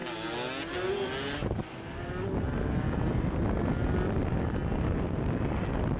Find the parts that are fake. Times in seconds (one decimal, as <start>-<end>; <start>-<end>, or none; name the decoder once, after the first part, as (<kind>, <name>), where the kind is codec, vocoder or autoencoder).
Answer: none